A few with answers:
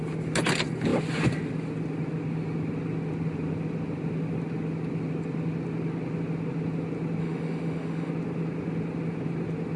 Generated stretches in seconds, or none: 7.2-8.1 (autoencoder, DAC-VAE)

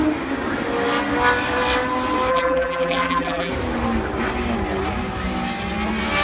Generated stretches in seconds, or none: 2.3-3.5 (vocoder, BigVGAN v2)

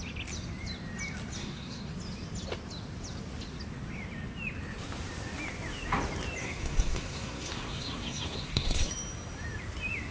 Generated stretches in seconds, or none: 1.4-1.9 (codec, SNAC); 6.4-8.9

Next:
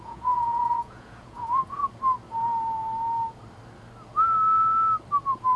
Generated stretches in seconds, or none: 0.0-1.8 (vocoder, Vocos)

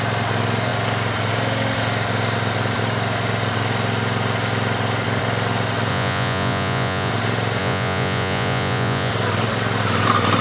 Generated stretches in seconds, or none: 5.9-7.1 (vocoder, Vocos); 7.6-9.1

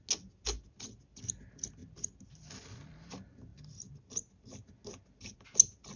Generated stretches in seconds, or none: none

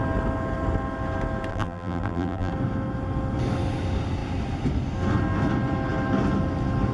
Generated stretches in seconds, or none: 1.5-2.5 (vocoder, BigVGAN v2)